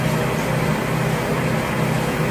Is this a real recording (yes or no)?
yes